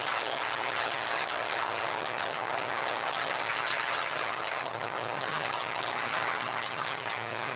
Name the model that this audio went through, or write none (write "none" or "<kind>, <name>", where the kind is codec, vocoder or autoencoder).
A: vocoder, HiFi-GAN